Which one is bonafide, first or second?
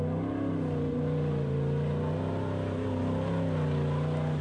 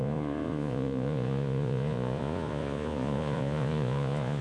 first